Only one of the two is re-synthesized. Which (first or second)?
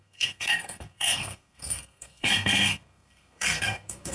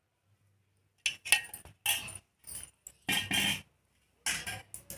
first